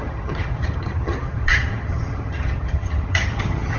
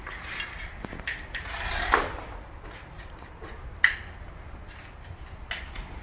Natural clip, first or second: second